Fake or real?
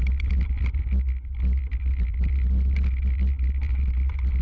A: real